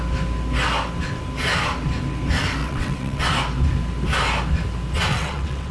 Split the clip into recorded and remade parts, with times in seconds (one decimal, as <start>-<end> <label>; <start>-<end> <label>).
0.0-2.6 recorded; 2.6-3.2 remade; 3.2-5.1 recorded; 5.1-5.7 remade